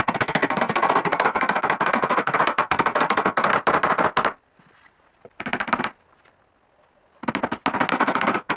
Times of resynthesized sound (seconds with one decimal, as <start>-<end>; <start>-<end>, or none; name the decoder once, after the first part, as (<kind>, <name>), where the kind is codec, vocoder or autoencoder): 0.0-3.5 (codec, SNAC); 7.9-8.6